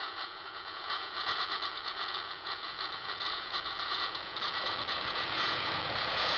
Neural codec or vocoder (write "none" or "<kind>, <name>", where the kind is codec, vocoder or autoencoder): vocoder, Vocos